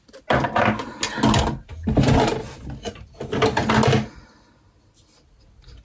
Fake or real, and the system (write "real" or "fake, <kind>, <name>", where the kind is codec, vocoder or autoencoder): real